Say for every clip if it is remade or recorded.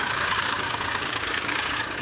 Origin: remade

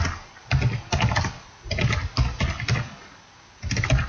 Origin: recorded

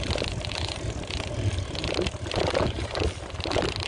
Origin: recorded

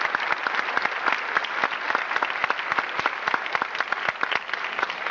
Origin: recorded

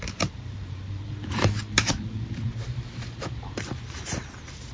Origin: remade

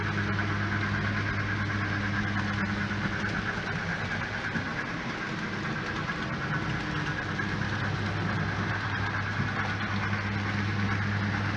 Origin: recorded